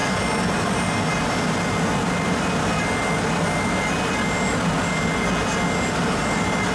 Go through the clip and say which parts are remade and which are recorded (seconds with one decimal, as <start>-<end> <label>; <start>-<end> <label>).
0.0-6.7 recorded